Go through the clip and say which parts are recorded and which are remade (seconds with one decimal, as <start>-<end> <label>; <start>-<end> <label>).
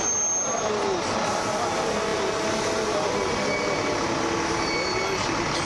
0.0-5.6 recorded